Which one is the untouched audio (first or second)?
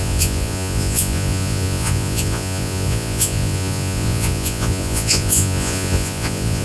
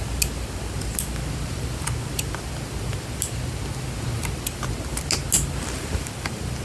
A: second